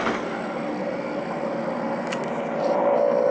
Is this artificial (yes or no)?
no